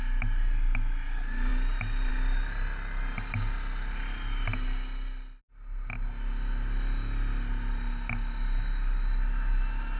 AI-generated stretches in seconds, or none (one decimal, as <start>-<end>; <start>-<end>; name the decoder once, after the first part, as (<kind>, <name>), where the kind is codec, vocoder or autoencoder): none